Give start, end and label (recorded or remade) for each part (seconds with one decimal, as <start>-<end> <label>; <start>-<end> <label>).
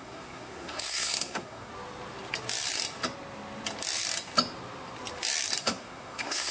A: 0.0-1.7 remade; 1.7-5.6 recorded; 5.6-6.5 remade